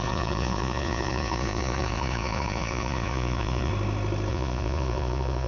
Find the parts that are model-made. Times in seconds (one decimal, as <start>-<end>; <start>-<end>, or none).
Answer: 0.0-3.7; 4.3-5.5